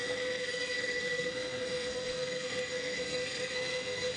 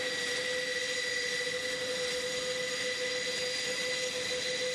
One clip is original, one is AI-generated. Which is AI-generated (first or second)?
first